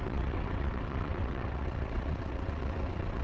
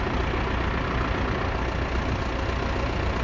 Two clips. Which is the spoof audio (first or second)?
first